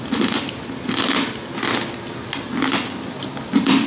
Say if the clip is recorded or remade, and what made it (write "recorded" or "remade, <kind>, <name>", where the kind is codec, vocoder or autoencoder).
recorded